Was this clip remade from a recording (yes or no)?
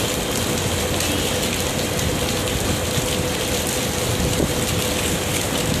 no